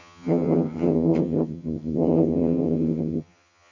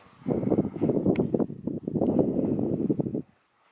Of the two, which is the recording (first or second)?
second